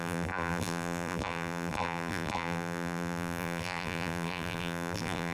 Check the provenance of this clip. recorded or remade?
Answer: remade